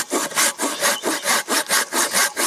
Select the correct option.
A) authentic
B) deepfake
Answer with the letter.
A